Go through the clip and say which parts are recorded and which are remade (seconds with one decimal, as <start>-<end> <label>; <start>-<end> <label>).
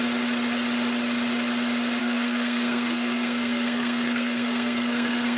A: 0.0-2.0 recorded; 2.0-5.4 remade